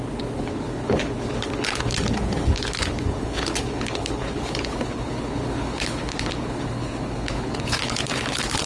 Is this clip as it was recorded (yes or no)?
no